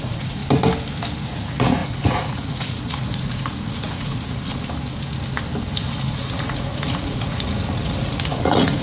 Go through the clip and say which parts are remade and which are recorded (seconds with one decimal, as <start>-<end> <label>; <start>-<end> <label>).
0.0-0.4 remade; 0.4-1.2 recorded; 1.2-4.5 remade; 4.5-6.1 recorded; 6.1-8.8 remade